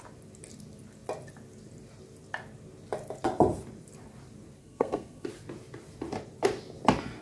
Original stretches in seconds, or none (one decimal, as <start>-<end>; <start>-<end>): 0.0-4.6; 5.3-7.2